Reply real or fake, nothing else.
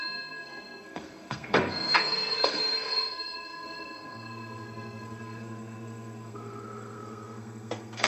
fake